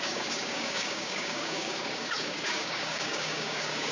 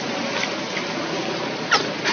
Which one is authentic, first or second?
second